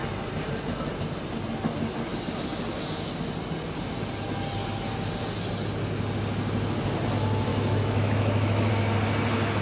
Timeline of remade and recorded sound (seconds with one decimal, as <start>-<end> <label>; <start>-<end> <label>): 0.0-7.5 recorded; 7.5-8.7 remade; 8.7-9.6 recorded